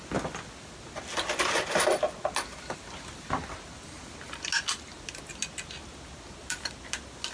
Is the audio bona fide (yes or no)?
yes